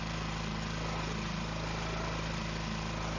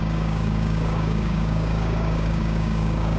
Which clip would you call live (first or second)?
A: first